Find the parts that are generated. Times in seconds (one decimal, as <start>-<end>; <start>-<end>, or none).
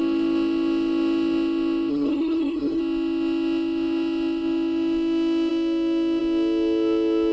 1.9-2.8